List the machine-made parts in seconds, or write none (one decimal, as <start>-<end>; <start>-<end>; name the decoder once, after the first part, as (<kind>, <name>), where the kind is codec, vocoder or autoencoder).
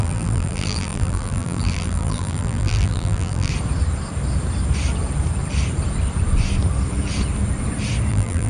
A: 0.0-3.5 (vocoder, BigVGAN v2); 8.1-8.5